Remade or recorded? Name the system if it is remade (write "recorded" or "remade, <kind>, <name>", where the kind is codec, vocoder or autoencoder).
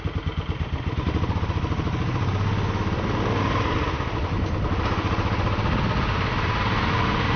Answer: recorded